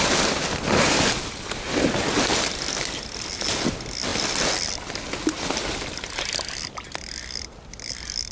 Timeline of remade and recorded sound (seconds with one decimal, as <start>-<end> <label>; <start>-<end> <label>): 0.0-8.3 recorded